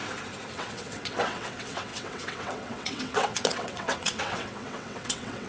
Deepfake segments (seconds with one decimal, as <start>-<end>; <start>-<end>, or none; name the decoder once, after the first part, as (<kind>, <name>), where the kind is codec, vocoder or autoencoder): 0.5-5.5 (vocoder, WaveNeXt)